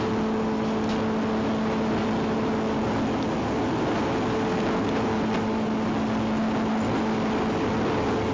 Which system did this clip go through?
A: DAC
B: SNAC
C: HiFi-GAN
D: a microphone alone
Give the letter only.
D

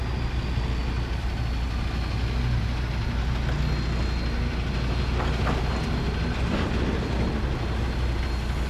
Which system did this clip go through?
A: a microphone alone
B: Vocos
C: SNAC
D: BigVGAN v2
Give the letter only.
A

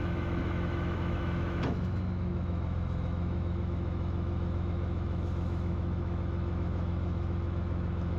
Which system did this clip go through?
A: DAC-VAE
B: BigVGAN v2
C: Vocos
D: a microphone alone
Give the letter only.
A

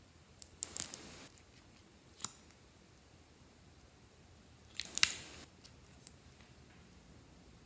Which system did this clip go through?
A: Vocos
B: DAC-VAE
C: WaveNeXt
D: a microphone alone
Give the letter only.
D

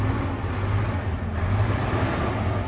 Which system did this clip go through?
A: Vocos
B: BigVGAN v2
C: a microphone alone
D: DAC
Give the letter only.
C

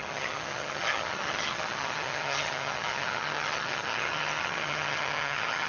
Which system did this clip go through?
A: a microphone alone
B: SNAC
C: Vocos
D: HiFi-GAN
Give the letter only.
D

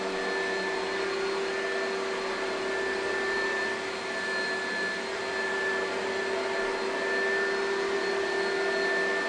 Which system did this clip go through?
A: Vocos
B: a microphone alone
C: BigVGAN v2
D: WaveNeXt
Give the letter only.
B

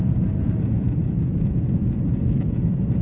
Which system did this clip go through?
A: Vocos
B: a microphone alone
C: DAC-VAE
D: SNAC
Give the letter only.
A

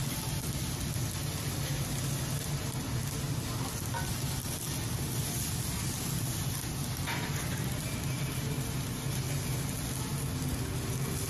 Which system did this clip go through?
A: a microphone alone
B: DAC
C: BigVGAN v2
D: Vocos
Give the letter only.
A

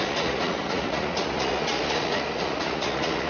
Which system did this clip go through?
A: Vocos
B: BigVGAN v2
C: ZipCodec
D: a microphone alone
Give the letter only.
A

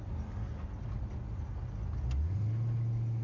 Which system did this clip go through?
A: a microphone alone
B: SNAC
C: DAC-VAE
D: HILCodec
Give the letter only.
A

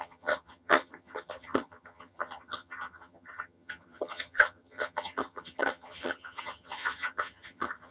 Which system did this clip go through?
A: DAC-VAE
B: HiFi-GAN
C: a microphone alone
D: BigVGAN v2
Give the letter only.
B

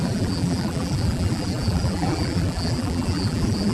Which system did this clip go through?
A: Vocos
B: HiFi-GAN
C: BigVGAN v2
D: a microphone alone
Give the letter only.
C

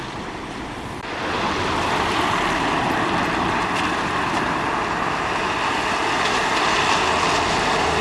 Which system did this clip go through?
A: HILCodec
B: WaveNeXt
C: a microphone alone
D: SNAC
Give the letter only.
C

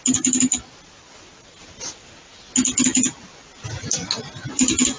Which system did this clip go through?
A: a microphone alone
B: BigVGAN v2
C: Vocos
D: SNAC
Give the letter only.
A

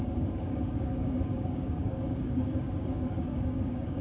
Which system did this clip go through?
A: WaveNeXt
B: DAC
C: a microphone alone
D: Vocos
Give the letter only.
B